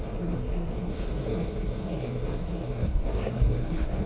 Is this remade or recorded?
remade